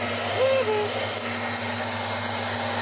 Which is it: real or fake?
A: real